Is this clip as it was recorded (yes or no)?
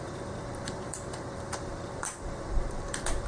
no